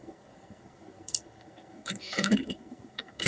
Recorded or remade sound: remade